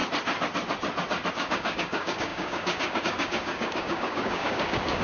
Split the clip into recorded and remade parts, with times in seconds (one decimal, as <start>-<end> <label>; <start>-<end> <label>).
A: 0.0-1.3 recorded; 1.3-5.0 remade